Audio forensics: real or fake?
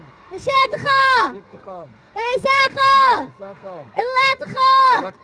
fake